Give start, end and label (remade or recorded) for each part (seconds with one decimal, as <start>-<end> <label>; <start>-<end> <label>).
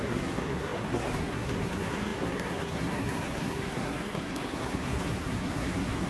0.0-6.1 remade